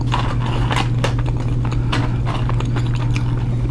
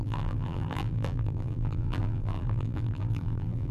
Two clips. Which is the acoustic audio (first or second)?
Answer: first